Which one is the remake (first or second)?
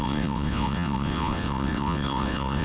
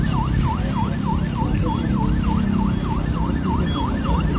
first